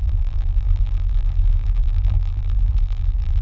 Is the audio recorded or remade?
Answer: remade